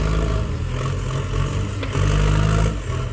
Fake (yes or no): no